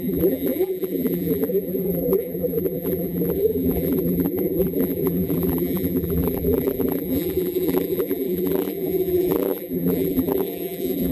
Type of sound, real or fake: fake